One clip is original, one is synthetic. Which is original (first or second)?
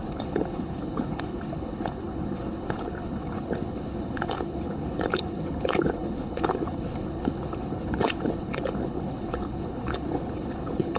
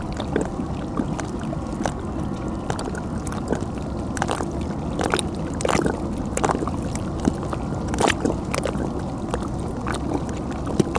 second